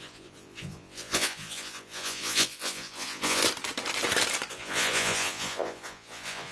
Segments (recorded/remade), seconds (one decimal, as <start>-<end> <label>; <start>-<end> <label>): 0.0-3.4 remade; 3.4-4.5 recorded; 4.5-6.5 remade